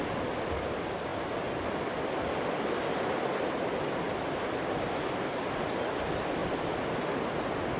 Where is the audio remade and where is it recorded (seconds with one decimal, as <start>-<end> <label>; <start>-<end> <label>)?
0.0-7.8 recorded